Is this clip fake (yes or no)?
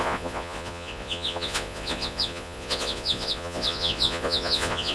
yes